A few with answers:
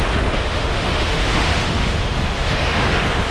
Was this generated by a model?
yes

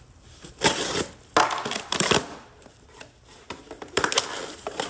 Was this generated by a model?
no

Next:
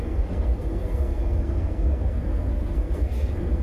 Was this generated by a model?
yes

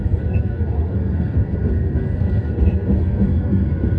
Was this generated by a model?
yes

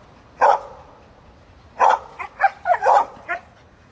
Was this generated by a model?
yes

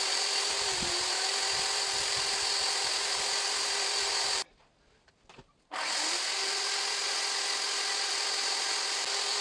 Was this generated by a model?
no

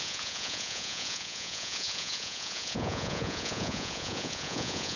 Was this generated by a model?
yes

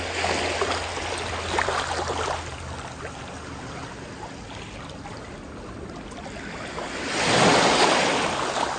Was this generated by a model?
no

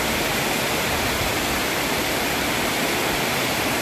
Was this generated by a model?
no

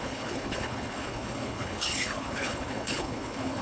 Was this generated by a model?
yes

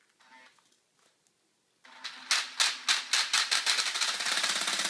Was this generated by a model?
no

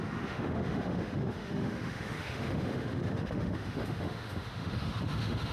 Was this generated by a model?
yes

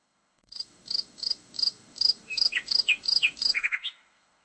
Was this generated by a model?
yes